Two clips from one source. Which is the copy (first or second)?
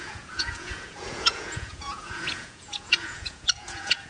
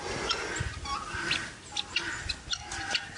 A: first